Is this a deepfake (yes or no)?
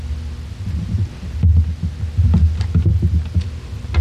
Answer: no